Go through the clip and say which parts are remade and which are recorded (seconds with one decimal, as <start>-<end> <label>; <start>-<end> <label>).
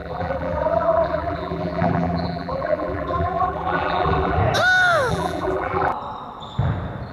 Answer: 0.0-4.4 remade; 4.4-5.1 recorded; 5.1-5.9 remade; 5.9-7.1 recorded